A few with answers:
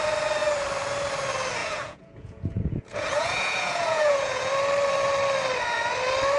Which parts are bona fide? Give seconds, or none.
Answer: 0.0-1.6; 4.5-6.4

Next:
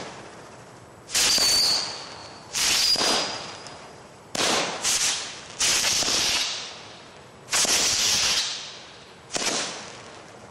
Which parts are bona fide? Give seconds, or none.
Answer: 0.0-2.2; 5.0-5.7; 6.7-8.5; 9.6-10.5